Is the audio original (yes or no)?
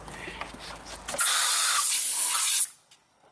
yes